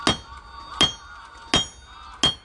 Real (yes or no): yes